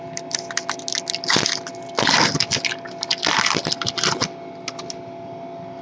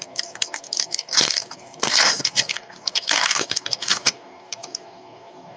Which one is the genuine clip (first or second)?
first